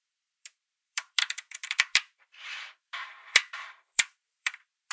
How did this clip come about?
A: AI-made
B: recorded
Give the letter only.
A